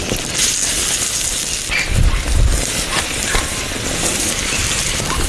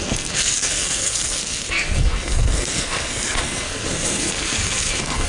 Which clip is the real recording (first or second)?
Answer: first